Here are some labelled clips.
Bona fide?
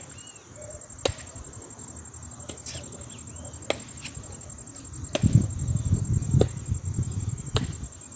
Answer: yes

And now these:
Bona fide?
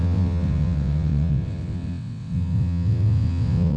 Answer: no